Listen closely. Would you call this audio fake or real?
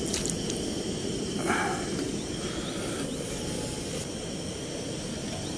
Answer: real